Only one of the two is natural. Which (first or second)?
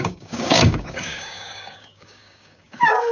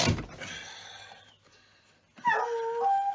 second